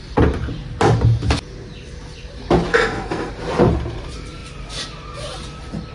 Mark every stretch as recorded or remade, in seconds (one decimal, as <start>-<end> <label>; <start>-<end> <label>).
0.0-2.7 recorded; 2.7-3.3 remade; 3.3-5.9 recorded